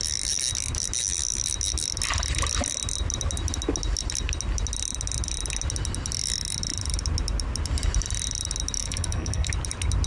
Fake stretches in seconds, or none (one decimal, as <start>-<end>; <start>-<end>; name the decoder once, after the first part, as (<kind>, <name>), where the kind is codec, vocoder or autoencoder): 8.8-9.5 (codec, SNAC)